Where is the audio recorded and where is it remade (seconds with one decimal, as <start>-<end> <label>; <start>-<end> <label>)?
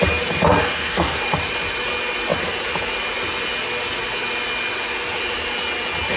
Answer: 0.0-0.6 recorded; 0.6-1.2 remade; 1.2-6.2 recorded